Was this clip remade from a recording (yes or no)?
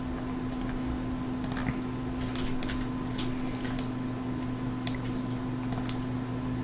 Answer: no